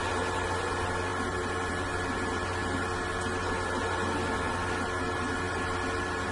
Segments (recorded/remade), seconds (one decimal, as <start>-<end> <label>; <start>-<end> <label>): 0.0-6.3 recorded